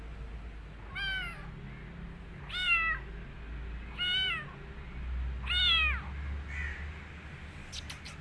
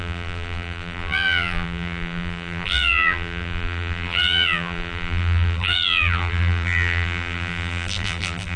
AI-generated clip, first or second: second